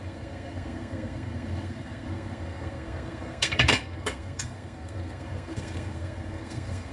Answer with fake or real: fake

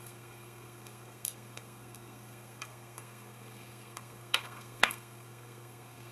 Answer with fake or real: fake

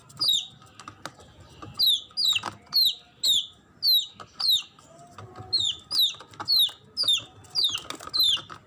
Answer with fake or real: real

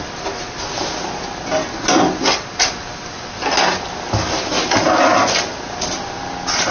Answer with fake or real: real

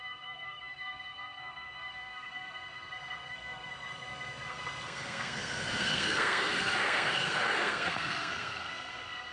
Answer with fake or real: fake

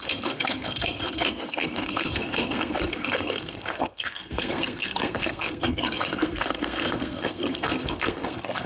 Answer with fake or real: fake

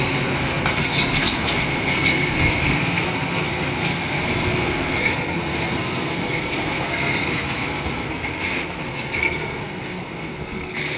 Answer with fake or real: fake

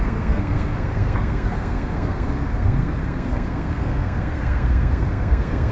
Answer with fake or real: fake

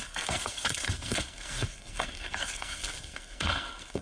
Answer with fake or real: fake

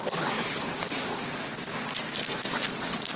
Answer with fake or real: real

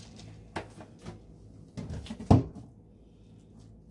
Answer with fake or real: real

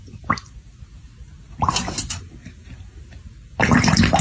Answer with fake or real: real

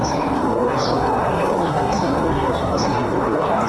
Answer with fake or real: fake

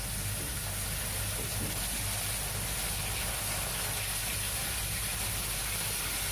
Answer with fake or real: real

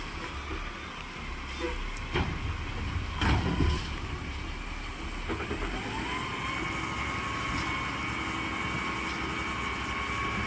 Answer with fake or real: real